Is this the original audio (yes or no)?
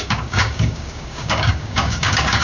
no